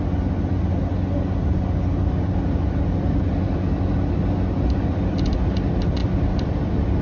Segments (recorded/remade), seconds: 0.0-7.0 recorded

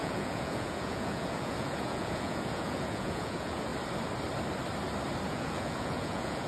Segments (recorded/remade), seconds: 0.0-3.7 remade; 3.7-5.3 recorded; 5.3-6.5 remade